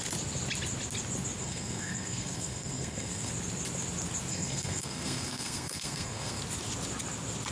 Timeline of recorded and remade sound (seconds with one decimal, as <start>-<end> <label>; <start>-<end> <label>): 0.0-1.4 recorded; 1.4-3.3 remade; 3.3-4.3 recorded; 4.3-6.4 remade; 6.4-7.5 recorded